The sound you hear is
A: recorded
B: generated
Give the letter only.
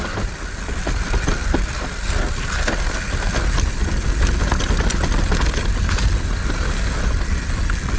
A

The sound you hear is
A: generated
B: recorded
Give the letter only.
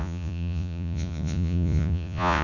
A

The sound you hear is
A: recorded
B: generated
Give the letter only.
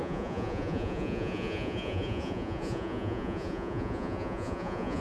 B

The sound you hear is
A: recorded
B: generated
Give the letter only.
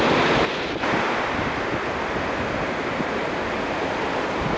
A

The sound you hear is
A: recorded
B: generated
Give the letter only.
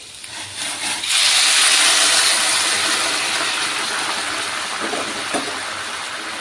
A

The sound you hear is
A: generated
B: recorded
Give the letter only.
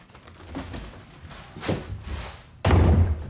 B